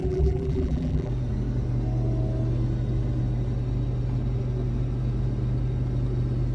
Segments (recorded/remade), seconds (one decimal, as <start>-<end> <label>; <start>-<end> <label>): 0.0-1.1 remade; 1.1-6.5 recorded